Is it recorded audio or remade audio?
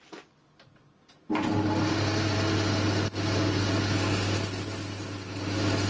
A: recorded